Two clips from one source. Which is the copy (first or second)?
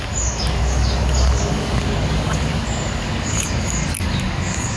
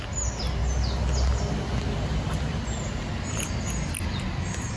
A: first